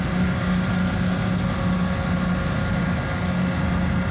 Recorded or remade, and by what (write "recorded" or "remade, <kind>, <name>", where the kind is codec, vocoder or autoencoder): recorded